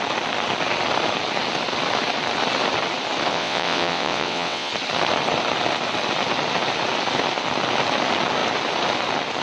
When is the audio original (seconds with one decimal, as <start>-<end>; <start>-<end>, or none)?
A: 0.0-3.3; 4.7-9.4